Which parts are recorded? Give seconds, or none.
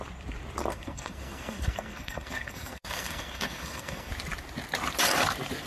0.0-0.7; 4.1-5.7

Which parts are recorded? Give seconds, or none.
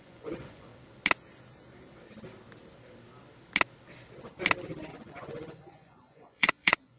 0.7-4.9